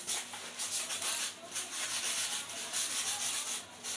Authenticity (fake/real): real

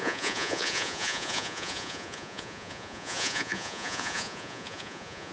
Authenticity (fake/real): fake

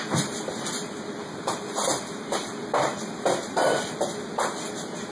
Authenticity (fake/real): real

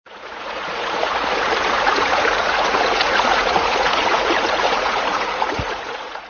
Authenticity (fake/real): fake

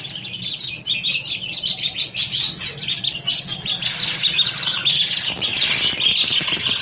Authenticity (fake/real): real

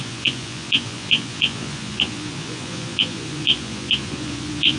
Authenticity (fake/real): fake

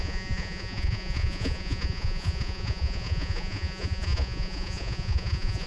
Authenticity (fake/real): fake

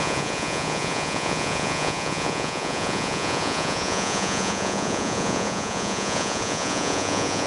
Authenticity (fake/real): fake